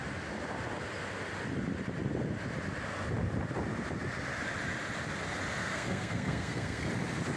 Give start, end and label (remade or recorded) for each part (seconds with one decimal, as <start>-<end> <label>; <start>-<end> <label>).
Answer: 0.0-5.6 recorded; 5.6-6.9 remade; 6.9-7.4 recorded